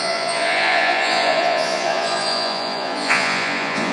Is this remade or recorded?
remade